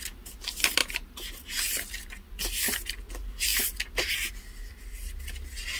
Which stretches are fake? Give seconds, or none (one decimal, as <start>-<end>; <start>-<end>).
none

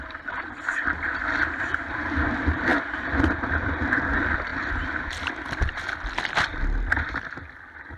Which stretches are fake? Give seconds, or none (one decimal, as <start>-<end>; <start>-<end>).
0.0-4.5; 6.2-8.0

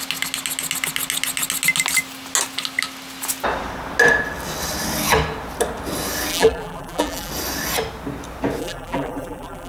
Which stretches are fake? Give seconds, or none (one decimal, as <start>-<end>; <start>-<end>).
6.3-7.3; 8.6-9.7

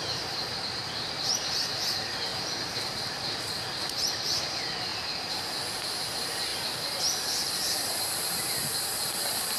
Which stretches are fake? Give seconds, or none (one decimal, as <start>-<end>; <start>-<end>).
0.0-2.3; 2.9-4.9; 5.9-9.6

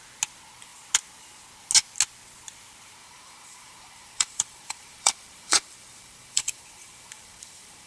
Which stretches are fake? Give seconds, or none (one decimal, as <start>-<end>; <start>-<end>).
3.0-7.9

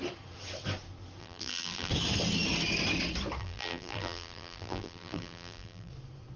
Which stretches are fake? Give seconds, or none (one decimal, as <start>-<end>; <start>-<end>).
1.2-1.9; 3.4-5.9

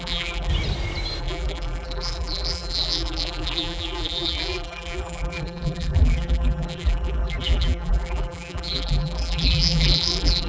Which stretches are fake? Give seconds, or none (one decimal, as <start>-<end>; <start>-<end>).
0.0-0.5; 1.2-10.5

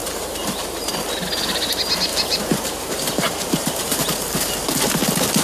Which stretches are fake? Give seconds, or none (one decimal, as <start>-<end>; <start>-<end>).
0.0-0.9; 2.1-4.0